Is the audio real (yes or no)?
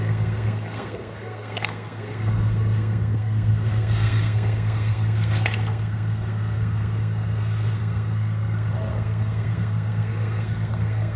no